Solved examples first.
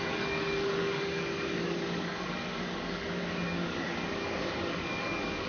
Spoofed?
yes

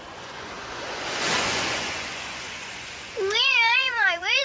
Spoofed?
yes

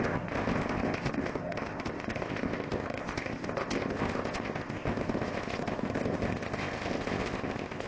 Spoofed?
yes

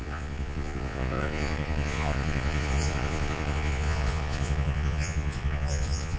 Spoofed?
yes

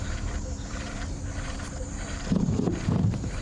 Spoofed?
yes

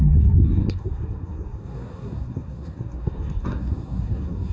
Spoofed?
yes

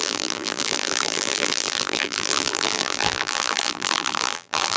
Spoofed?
yes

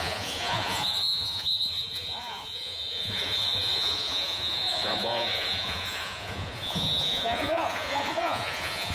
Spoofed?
yes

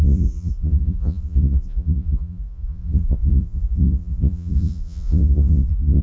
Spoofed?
yes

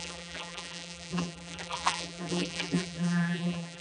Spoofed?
yes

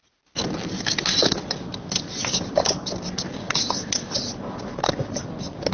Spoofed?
no